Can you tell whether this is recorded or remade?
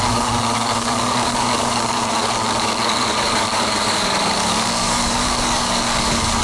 remade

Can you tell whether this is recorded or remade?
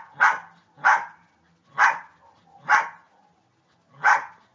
recorded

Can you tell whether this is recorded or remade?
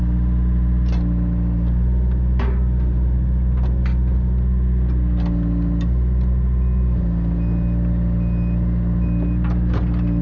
recorded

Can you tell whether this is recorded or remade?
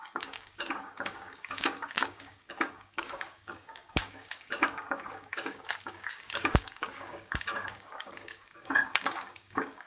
remade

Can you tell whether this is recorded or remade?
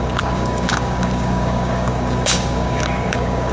remade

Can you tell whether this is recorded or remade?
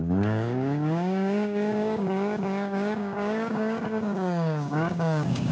remade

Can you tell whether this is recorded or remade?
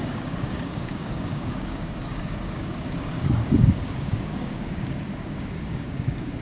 remade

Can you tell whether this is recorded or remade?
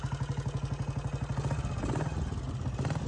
recorded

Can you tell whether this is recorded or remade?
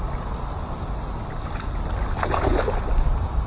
recorded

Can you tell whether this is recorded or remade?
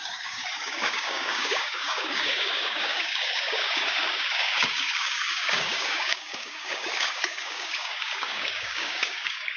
remade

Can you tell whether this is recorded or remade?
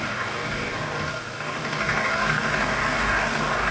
remade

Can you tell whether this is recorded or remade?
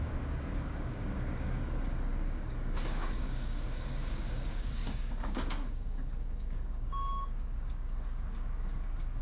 remade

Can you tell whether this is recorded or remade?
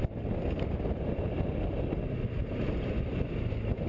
recorded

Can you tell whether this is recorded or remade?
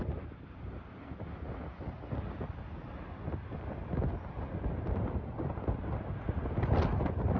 recorded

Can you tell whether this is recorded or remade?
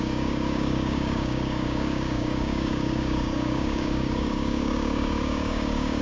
remade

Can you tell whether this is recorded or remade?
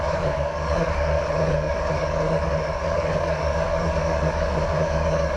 remade